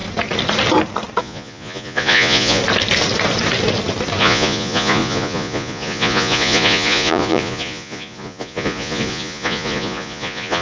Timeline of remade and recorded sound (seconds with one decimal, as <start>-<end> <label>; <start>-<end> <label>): 0.0-1.2 recorded; 1.2-2.6 remade; 2.6-4.2 recorded; 4.2-10.6 remade